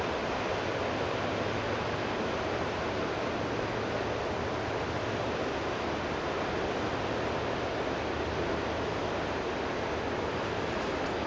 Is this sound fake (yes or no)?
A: no